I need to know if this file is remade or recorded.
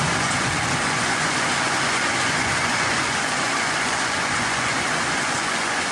remade